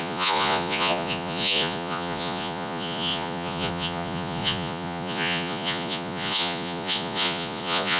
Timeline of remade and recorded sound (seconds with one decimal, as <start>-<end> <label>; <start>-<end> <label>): 0.0-8.0 remade